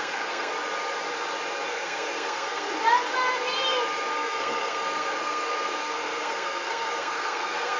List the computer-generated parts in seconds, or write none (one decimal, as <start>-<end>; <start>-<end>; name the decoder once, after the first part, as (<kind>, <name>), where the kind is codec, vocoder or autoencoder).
0.0-0.5 (codec, SNAC); 1.7-2.7; 4.1-7.8